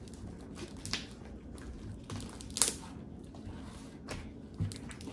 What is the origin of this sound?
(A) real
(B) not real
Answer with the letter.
A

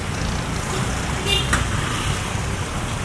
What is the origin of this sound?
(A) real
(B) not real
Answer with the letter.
A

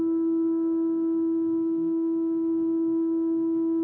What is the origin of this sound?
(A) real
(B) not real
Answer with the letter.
B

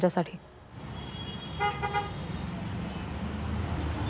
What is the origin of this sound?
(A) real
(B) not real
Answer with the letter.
A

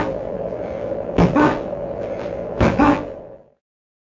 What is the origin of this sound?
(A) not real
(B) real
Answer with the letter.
A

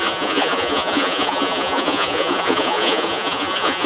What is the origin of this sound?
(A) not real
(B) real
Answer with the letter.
A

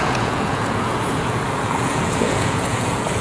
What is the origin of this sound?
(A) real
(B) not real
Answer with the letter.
B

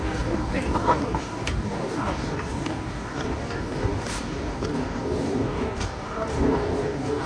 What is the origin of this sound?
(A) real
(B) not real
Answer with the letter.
B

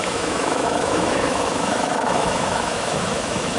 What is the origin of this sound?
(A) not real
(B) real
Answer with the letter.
A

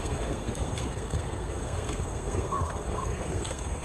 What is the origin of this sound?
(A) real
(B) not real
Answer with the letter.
B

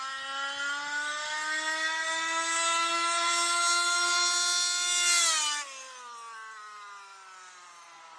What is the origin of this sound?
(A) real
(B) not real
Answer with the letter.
A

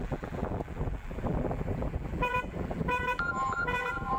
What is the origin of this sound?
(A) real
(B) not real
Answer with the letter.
B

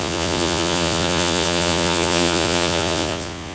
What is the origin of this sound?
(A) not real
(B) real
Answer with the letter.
A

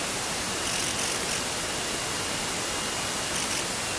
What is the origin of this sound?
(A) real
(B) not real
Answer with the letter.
A